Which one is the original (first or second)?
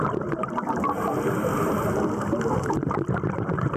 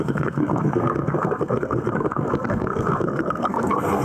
first